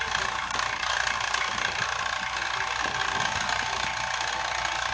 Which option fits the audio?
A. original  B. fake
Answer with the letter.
A